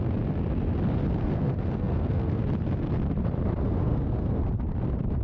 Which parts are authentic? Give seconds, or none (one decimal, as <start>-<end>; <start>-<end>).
0.0-1.2; 2.4-3.8; 4.4-5.2